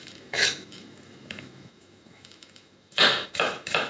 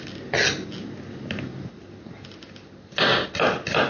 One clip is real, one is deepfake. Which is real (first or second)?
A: second